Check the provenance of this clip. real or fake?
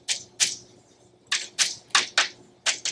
real